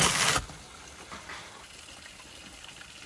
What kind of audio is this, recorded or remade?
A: recorded